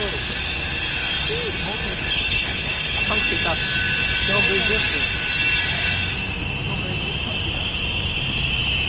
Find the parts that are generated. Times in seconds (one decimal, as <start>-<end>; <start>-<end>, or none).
1.9-3.0